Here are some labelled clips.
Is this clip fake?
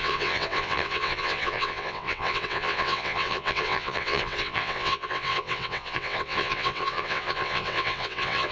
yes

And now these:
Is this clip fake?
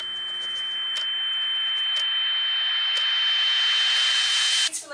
no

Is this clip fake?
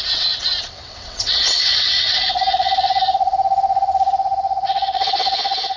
yes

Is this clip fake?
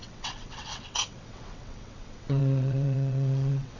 yes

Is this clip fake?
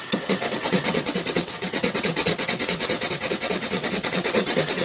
yes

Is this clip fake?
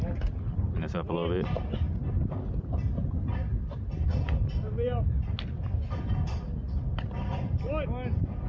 no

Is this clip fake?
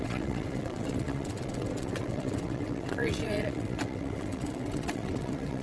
yes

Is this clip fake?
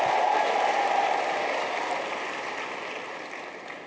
no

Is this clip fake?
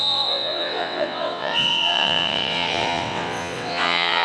yes